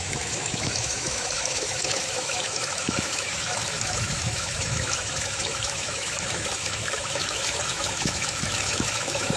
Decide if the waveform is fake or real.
fake